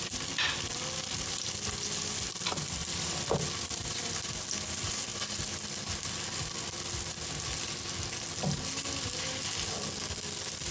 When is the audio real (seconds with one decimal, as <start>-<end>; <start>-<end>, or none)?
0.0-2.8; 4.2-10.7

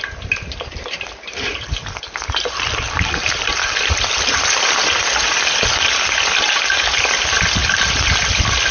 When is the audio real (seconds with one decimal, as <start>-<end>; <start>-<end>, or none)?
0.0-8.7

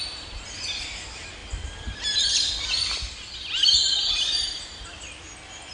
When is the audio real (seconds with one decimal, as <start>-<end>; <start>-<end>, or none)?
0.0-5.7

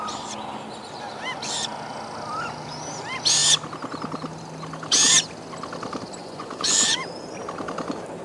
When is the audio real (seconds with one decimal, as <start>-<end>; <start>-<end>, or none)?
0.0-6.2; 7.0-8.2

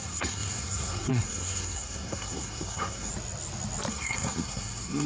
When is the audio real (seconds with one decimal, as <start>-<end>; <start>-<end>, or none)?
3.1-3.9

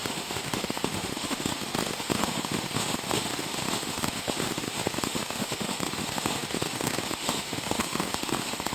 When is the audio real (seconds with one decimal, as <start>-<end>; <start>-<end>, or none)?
none

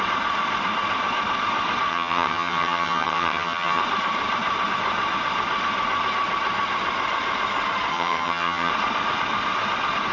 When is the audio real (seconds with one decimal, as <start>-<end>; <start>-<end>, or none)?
0.0-1.9; 3.8-7.9; 8.7-10.1

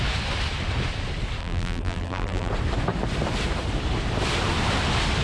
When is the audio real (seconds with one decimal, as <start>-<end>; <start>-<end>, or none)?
0.0-1.4; 2.5-5.2